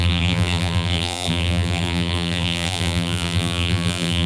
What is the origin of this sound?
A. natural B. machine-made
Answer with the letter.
B